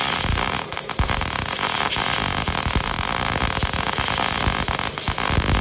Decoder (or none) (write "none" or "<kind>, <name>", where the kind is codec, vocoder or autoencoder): none